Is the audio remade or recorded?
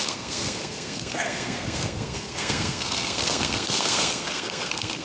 remade